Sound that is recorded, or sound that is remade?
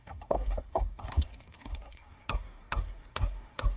remade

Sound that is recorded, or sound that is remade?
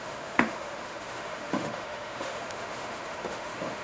remade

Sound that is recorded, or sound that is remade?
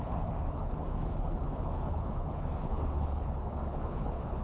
remade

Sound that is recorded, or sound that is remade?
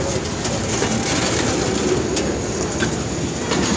recorded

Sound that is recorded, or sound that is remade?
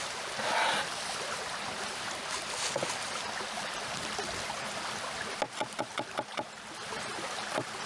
recorded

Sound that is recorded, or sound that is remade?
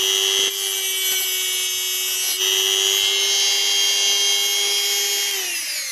recorded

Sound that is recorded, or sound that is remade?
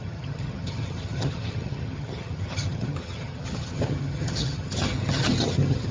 remade